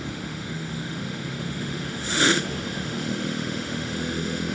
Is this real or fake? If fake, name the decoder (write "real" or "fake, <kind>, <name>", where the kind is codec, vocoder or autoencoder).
fake, autoencoder, DAC-VAE